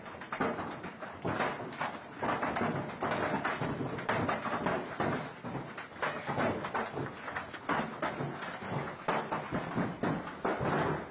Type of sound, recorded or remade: recorded